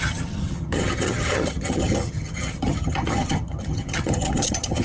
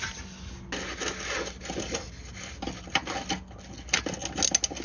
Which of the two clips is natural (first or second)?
second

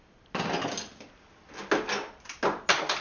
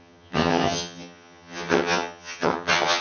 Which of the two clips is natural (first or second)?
first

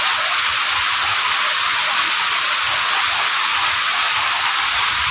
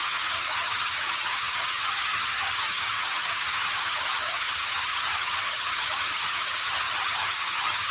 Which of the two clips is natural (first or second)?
first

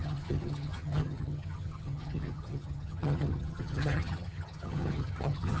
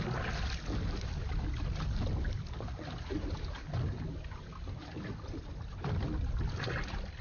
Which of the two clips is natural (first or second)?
second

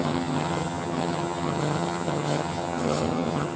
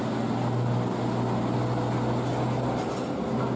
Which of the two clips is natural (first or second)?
second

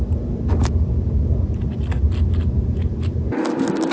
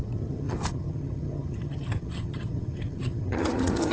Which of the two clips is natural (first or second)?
first